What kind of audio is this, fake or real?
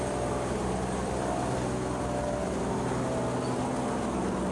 real